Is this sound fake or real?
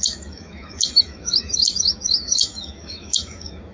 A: fake